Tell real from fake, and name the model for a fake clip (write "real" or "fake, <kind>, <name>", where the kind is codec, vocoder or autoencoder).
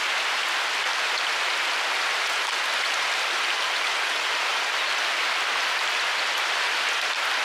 real